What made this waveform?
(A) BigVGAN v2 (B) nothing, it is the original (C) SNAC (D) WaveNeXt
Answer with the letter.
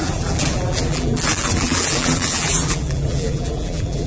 A